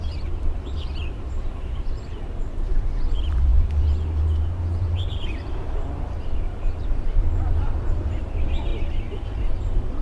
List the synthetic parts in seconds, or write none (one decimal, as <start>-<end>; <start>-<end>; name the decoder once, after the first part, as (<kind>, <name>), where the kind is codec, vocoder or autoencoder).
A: 0.0-8.7 (vocoder, BigVGAN v2); 9.4-10.0